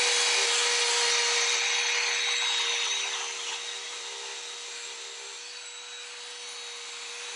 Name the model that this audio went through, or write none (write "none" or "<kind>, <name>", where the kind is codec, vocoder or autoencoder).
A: none